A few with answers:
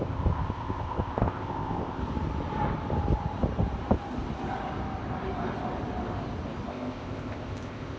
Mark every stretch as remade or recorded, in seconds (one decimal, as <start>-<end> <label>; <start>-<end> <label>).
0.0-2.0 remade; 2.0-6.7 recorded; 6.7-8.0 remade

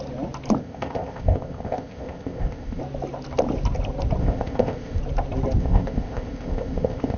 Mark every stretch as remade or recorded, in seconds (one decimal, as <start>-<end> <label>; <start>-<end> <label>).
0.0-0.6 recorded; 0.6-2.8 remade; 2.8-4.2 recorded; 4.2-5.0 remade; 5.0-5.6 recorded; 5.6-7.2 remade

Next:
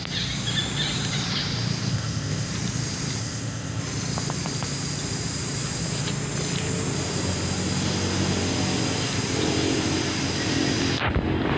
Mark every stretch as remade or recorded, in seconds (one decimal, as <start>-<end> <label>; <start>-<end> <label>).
0.0-1.9 recorded; 1.9-2.5 remade; 2.5-3.2 recorded; 3.2-3.8 remade; 3.8-11.6 recorded

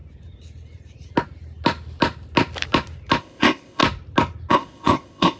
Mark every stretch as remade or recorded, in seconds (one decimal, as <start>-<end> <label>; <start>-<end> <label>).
0.0-3.2 recorded; 3.2-3.8 remade; 3.8-4.5 recorded; 4.5-5.4 remade